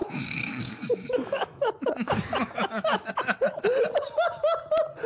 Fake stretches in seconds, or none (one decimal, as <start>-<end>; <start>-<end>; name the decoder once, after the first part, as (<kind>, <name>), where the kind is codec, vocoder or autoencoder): 0.0-3.1 (autoencoder, DAC-VAE)